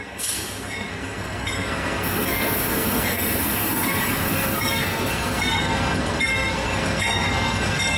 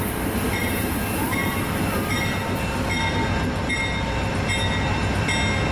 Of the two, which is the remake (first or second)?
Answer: first